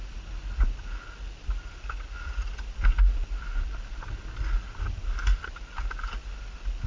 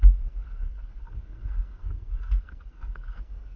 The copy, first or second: second